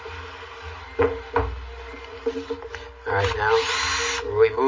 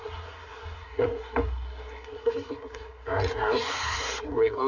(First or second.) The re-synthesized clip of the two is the second